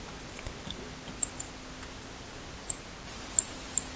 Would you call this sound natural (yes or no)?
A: yes